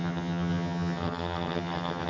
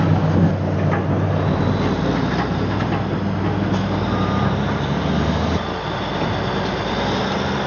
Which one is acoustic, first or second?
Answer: second